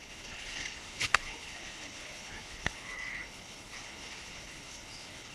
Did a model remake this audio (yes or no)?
yes